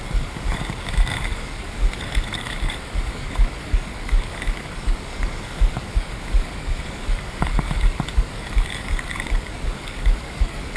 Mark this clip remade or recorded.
remade